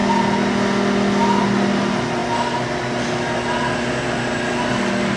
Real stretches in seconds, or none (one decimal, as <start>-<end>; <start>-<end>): 0.0-5.2